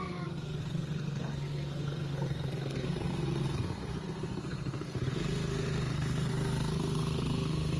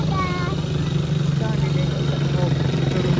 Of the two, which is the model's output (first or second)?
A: first